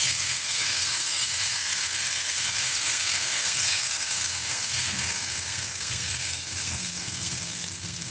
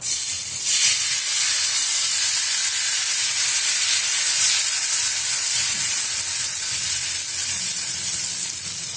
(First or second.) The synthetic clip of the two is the first